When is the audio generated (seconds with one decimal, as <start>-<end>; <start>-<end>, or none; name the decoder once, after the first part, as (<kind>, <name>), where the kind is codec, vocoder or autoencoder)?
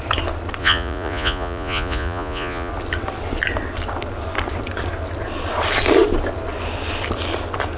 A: 0.6-2.7 (vocoder, Vocos)